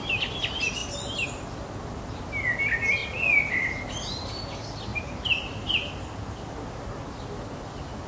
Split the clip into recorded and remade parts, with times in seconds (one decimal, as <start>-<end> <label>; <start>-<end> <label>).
0.0-4.9 recorded; 4.9-5.9 remade; 5.9-8.1 recorded

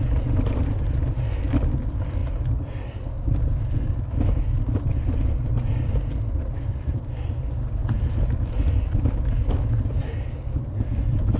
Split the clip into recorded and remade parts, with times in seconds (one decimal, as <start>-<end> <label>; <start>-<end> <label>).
0.0-11.4 recorded

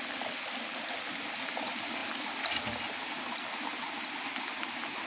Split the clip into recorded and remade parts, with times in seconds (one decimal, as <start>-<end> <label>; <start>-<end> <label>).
0.0-5.1 recorded

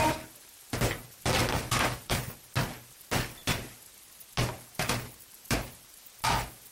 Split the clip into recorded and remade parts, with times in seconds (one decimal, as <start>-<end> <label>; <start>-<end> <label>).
0.0-1.4 recorded; 1.4-2.2 remade; 2.2-6.7 recorded

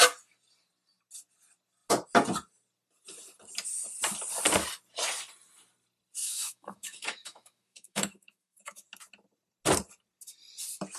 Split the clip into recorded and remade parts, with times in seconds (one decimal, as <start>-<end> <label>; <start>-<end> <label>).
0.0-6.2 recorded; 6.2-8.8 remade; 8.8-11.0 recorded

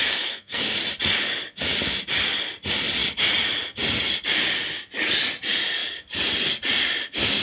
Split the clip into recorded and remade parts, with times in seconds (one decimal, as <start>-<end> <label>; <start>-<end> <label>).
0.0-0.6 remade; 0.6-7.4 recorded

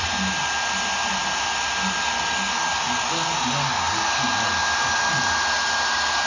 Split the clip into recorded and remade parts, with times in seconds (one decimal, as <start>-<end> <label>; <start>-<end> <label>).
0.0-6.3 recorded

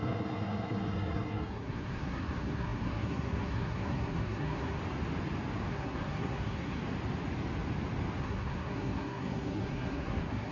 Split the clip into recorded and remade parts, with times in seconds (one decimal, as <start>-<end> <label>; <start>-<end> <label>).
0.0-4.8 remade; 4.8-5.7 recorded; 5.7-6.8 remade; 6.8-8.2 recorded; 8.2-10.5 remade